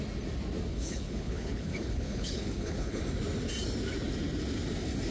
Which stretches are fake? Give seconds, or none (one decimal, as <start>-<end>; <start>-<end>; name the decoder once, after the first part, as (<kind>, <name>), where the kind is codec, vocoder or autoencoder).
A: 0.7-3.0 (codec, HILCodec)

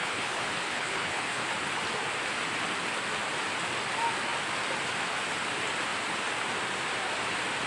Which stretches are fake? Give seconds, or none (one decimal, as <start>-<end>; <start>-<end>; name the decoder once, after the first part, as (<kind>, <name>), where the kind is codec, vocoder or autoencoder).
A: 0.0-1.5 (codec, HILCodec)